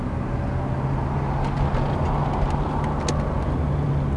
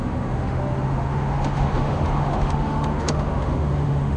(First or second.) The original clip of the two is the first